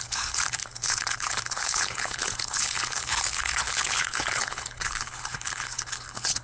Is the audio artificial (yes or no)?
yes